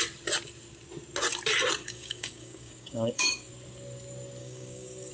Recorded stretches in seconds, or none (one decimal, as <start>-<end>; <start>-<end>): 0.0-1.8; 3.5-4.4